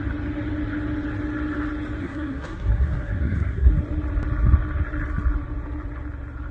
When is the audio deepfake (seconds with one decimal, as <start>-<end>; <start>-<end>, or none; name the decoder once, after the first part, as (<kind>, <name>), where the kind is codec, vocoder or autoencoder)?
2.0-3.7 (codec, SNAC)